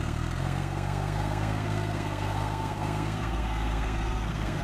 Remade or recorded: remade